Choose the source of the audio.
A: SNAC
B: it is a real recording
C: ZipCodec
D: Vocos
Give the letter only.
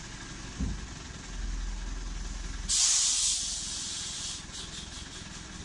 B